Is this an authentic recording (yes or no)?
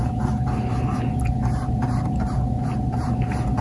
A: yes